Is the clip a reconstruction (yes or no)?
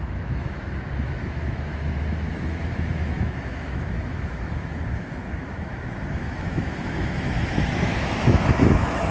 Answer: yes